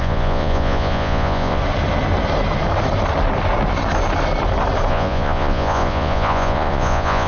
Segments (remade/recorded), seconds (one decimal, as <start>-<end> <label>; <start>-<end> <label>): 0.0-1.6 remade; 1.6-4.9 recorded; 4.9-7.3 remade